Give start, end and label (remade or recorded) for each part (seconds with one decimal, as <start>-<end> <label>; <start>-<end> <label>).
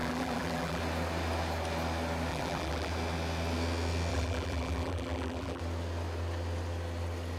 0.0-0.8 remade; 0.8-2.3 recorded; 2.3-2.9 remade; 2.9-4.1 recorded; 4.1-5.6 remade; 5.6-7.4 recorded